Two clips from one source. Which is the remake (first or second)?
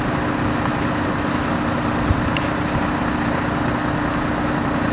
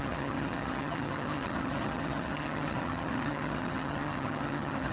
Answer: second